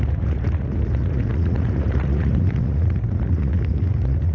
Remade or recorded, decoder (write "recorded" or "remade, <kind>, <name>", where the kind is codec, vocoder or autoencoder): remade, vocoder, Vocos